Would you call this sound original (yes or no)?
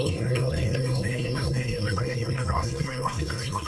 no